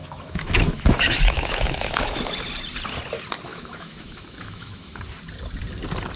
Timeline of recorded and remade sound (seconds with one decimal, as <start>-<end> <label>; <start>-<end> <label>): 0.0-2.2 remade; 2.2-3.5 recorded; 3.5-5.0 remade; 5.0-6.2 recorded